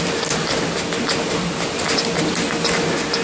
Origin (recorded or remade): recorded